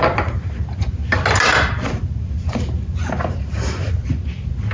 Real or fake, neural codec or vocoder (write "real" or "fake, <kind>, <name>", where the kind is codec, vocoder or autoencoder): real